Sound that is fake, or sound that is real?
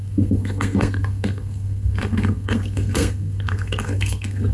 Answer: fake